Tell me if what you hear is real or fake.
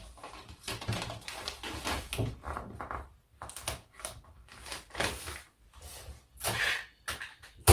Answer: real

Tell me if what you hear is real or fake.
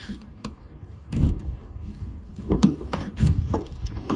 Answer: fake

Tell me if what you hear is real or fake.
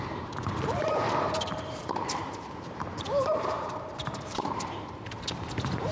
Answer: fake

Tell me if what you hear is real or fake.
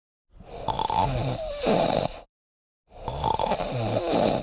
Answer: real